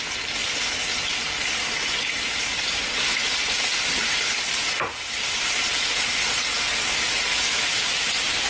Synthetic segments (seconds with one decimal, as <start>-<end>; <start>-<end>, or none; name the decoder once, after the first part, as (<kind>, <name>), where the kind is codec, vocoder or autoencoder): 7.3-7.9 (autoencoder, DAC-VAE)

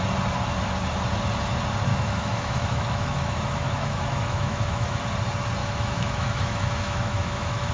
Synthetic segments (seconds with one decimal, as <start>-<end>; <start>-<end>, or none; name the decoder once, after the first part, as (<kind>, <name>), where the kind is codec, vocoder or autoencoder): 1.9-5.0 (autoencoder, DAC-VAE); 5.6-7.7